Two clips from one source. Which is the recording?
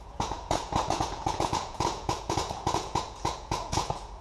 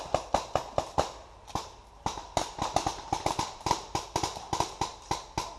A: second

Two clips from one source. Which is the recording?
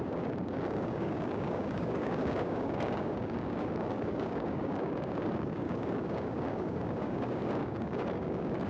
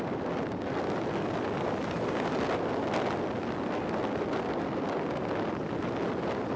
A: second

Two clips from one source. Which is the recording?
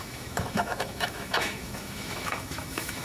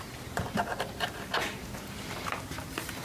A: second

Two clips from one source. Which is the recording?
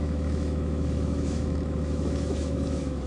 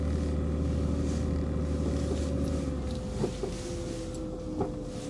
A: second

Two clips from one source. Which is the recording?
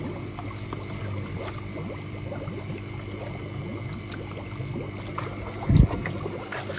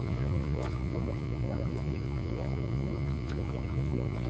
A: first